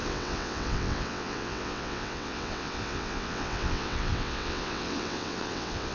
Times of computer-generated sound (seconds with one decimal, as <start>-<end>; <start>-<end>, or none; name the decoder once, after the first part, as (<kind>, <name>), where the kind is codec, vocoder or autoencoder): 0.0-5.9 (vocoder, WaveNeXt)

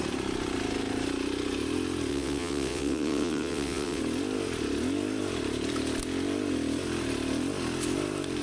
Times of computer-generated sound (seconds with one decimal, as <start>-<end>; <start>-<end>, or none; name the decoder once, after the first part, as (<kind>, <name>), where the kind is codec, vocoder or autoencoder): 2.1-4.0 (vocoder, WaveNeXt)

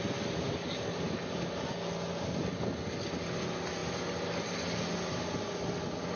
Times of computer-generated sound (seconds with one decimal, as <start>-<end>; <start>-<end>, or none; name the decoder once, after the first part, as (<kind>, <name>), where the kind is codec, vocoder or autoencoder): none